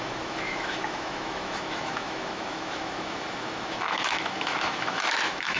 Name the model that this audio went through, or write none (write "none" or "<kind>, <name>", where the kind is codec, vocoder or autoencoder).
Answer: autoencoder, DAC-VAE